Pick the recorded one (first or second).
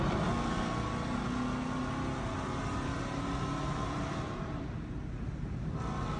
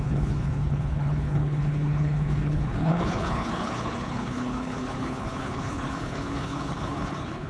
first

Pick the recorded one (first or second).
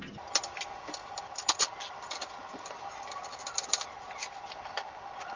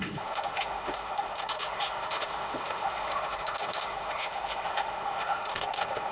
first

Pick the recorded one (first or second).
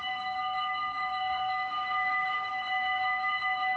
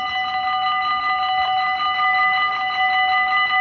second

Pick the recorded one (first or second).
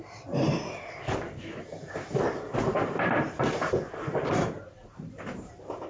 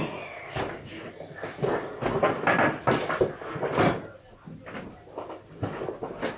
second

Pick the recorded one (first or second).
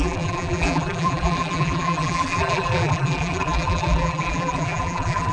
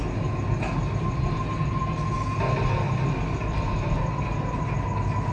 second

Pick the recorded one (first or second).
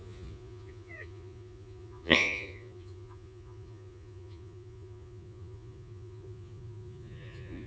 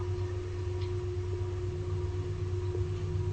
second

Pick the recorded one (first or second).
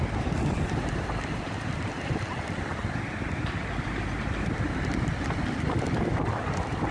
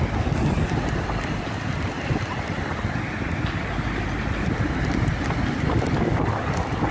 second